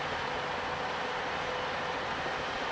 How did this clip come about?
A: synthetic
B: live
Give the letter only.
B